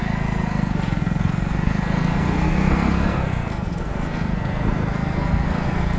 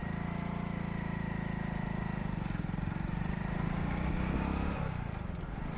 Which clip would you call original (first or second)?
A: second